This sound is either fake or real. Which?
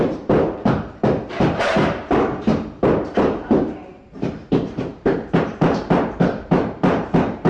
fake